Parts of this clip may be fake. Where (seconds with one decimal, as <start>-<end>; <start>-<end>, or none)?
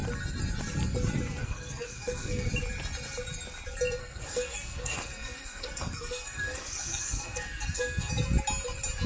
1.4-2.5; 4.0-8.1